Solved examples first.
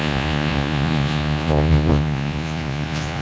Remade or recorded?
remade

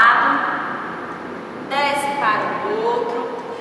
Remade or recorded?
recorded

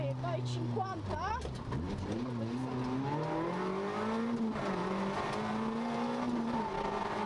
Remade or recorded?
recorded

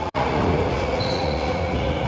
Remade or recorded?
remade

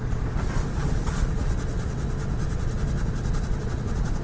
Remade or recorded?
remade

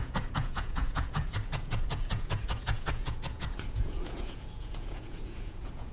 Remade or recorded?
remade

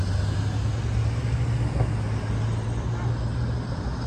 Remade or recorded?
recorded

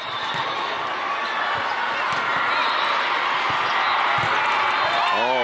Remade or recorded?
recorded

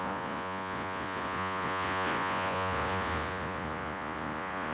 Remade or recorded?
remade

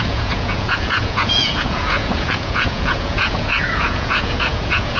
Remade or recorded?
remade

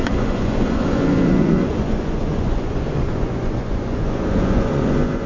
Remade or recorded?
remade